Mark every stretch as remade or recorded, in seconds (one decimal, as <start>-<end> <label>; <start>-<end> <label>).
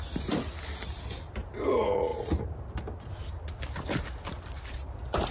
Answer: 0.0-0.7 recorded; 0.7-1.5 remade; 1.5-2.1 recorded; 2.1-3.1 remade; 3.1-5.3 recorded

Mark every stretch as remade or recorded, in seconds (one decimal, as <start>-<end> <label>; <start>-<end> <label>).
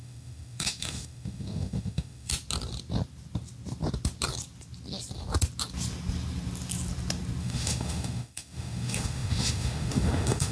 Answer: 0.0-2.3 remade; 2.3-7.4 recorded; 7.4-10.5 remade